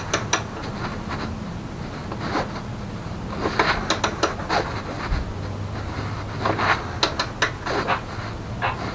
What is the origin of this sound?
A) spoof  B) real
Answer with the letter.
B